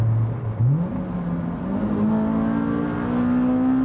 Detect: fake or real real